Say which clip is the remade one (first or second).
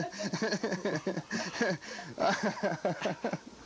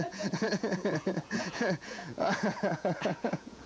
second